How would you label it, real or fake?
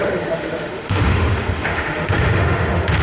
fake